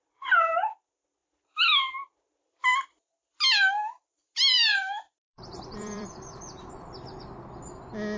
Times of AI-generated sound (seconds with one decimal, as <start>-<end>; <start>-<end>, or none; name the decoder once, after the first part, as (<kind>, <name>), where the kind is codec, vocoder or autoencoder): 4.7-6.7 (vocoder, BigVGAN v2)